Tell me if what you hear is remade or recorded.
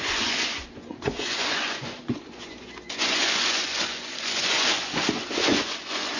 remade